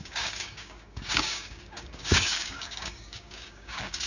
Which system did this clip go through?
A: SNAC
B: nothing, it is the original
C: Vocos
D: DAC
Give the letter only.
D